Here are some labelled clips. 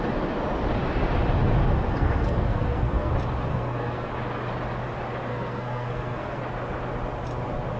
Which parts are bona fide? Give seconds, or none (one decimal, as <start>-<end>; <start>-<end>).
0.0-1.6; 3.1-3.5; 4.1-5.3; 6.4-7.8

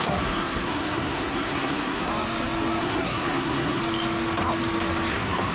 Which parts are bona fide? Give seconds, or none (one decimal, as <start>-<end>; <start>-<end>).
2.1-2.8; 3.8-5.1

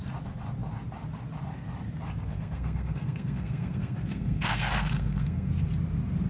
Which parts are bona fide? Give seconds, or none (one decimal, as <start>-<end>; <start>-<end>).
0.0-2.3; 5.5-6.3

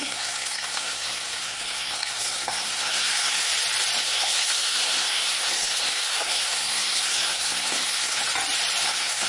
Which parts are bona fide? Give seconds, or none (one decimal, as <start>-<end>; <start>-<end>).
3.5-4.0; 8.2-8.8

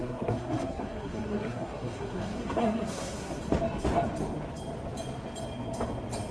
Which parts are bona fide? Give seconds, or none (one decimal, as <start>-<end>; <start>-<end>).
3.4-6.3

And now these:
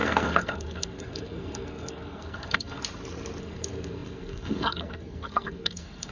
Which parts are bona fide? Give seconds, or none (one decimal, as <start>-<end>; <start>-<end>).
2.8-3.4